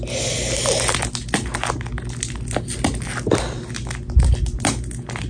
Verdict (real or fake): real